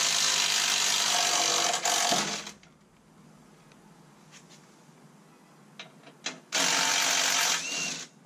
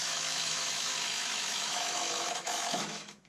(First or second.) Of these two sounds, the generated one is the second